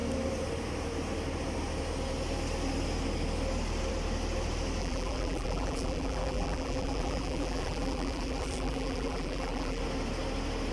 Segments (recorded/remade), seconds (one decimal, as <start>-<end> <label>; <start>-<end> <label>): 0.0-4.8 recorded; 4.8-9.8 remade; 9.8-10.7 recorded